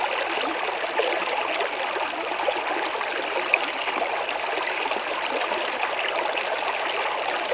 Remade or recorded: recorded